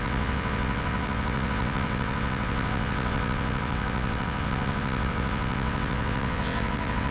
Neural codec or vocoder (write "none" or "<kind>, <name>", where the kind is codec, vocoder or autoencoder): vocoder, WaveNeXt